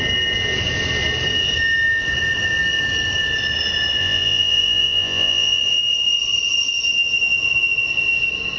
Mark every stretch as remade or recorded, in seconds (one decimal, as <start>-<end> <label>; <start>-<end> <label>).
0.0-4.0 recorded; 4.0-5.6 remade; 5.6-8.6 recorded